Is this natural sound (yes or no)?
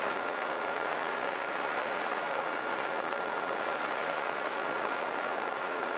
no